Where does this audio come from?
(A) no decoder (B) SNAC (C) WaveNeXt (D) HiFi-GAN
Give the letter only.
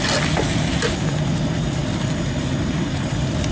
A